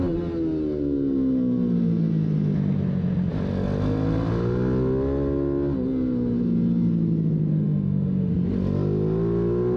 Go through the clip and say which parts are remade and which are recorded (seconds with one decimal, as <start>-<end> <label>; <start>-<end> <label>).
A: 0.0-7.5 recorded; 7.5-8.3 remade; 8.3-9.8 recorded